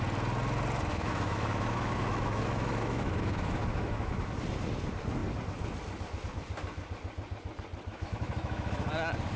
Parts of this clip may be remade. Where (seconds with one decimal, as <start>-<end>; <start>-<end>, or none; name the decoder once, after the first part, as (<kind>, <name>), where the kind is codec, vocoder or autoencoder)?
0.9-4.3 (autoencoder, DAC-VAE); 7.9-8.7